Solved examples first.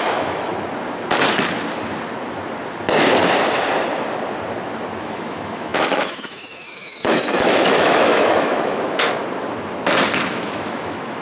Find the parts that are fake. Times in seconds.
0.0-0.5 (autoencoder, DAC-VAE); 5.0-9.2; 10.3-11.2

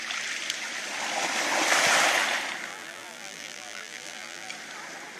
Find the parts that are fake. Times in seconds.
2.7-4.5 (vocoder, BigVGAN v2)

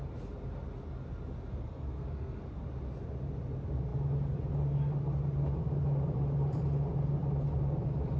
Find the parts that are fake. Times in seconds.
1.5-2.4 (codec, SNAC)

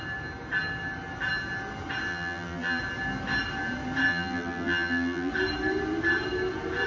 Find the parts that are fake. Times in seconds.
2.1-2.8 (vocoder, BigVGAN v2); 4.1-5.3

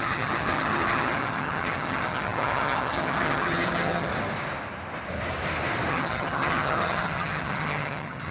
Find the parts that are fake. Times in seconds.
0.0-4.1 (vocoder, HiFi-GAN); 5.9-8.3

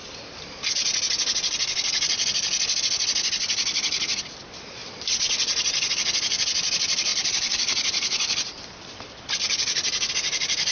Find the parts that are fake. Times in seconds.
4.8-5.9 (vocoder, BigVGAN v2); 7.1-10.1

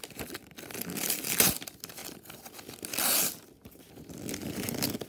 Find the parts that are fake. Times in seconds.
none

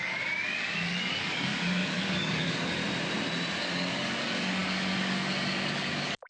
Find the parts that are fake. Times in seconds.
0.0-2.8 (codec, DAC); 3.6-6.3